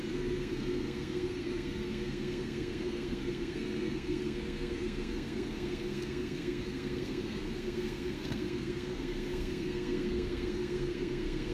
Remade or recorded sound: remade